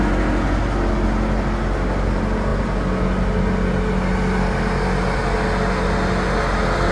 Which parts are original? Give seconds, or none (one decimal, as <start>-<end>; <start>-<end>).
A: 0.0-6.9